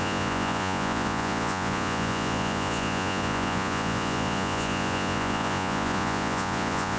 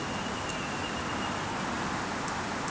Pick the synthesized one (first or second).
first